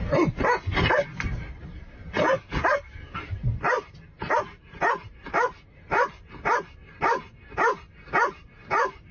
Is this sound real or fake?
fake